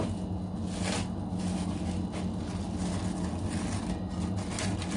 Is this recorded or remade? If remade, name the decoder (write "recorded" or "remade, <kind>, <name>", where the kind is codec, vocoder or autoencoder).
recorded